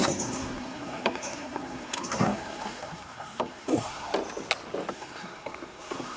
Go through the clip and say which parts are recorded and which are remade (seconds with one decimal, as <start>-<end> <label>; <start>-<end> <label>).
0.0-4.1 remade; 4.1-4.9 recorded; 4.9-6.2 remade